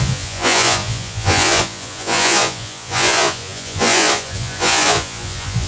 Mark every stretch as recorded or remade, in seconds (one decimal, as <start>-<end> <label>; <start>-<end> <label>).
0.0-5.7 remade